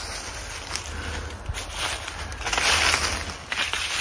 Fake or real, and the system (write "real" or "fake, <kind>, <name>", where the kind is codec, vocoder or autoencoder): real